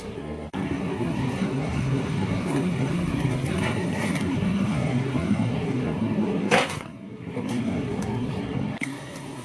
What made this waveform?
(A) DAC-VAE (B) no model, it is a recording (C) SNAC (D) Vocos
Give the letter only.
C